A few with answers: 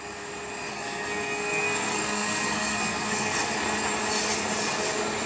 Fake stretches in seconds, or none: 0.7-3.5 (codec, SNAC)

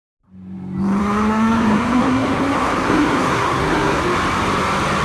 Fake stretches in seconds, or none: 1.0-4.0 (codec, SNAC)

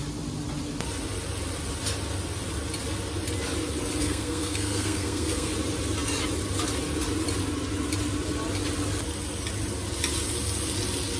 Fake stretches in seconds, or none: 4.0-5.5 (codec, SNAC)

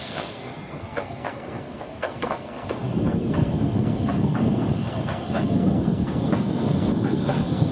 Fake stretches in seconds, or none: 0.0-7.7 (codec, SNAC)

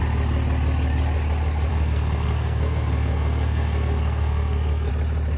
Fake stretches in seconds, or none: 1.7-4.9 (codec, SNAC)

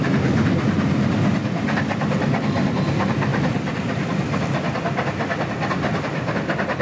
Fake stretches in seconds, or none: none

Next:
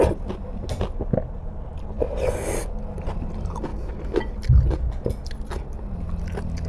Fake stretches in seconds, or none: none

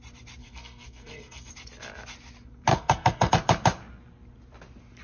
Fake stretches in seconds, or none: 0.4-1.5 (codec, SNAC); 2.7-3.3